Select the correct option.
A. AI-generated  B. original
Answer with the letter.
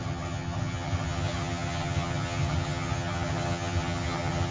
A